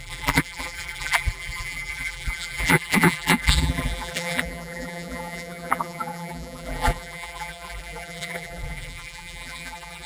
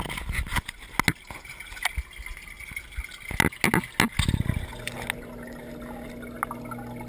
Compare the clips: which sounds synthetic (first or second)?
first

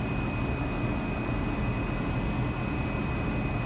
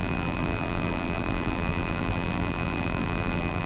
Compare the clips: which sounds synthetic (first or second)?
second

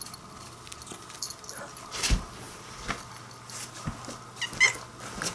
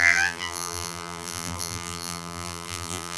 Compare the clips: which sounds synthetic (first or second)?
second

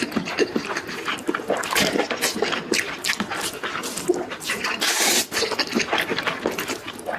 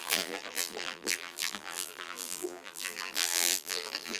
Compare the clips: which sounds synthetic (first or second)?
second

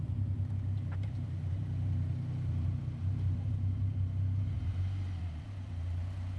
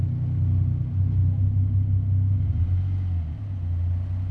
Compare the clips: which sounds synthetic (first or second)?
first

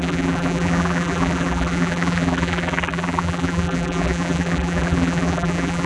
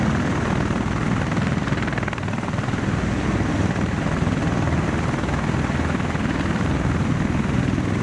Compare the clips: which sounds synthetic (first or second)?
first